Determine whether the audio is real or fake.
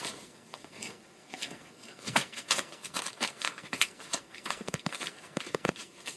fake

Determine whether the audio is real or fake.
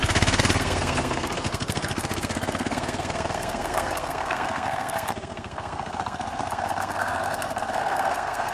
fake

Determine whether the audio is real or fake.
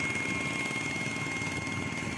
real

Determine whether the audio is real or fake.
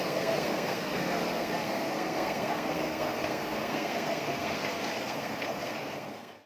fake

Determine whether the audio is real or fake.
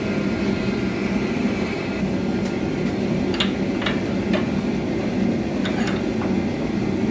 real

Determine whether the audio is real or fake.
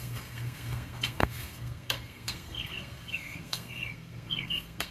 fake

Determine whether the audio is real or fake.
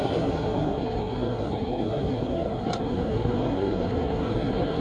fake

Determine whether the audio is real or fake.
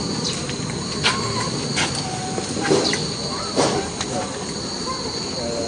real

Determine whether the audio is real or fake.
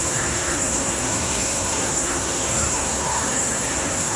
fake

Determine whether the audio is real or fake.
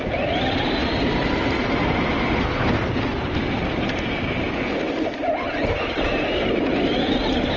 real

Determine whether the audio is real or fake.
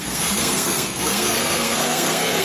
fake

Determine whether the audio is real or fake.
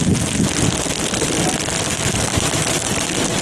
real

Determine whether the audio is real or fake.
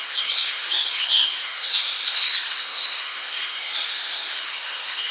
fake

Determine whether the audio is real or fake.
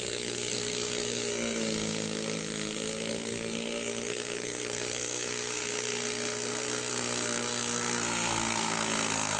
fake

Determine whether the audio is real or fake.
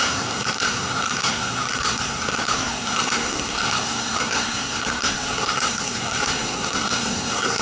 fake